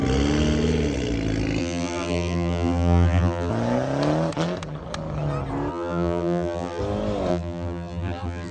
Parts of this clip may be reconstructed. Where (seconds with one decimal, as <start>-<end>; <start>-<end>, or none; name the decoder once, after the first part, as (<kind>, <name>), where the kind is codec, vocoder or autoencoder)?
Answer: 1.6-3.5 (vocoder, BigVGAN v2); 5.7-6.8; 7.3-8.5